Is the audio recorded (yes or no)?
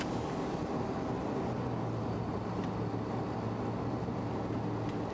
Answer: yes